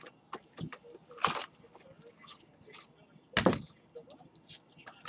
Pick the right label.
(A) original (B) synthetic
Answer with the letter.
A